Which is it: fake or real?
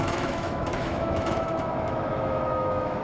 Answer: fake